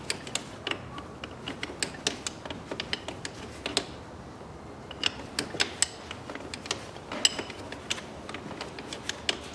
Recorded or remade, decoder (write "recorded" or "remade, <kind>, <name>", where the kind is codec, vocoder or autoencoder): recorded